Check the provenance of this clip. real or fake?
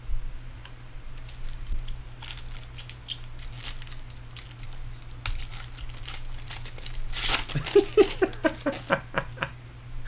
real